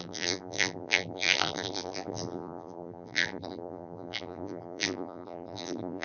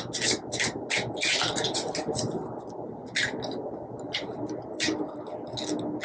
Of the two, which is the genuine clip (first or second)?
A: second